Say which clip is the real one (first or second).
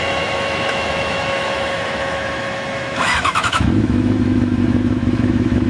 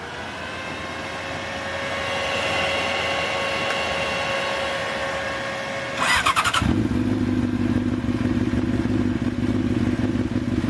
second